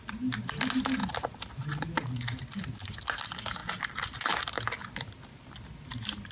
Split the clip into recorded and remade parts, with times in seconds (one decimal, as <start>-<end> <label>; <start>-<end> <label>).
0.0-1.0 recorded; 1.0-2.6 remade; 2.6-6.3 recorded